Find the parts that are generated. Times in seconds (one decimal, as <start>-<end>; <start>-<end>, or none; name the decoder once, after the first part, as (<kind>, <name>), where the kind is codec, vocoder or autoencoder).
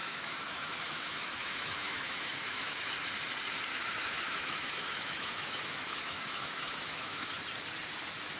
0.0-2.9 (autoencoder, DAC-VAE); 3.7-7.3